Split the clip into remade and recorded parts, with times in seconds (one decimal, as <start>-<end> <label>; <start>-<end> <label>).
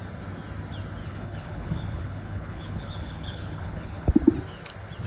0.0-1.0 recorded; 1.0-4.1 remade; 4.1-5.1 recorded